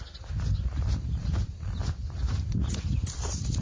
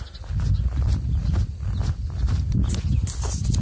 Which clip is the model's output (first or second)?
first